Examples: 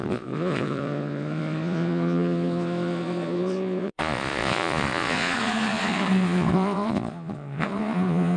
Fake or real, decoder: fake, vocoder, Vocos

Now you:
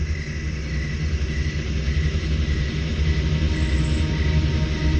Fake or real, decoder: real